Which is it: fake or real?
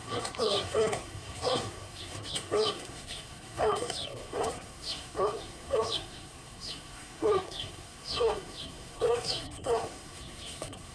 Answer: fake